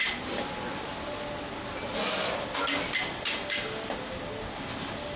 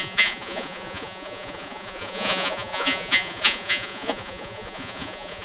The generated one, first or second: second